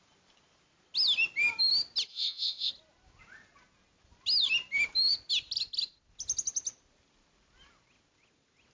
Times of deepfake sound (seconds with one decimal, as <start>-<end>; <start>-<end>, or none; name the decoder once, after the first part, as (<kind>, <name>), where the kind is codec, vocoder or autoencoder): 2.1-2.7 (vocoder, WaveNeXt)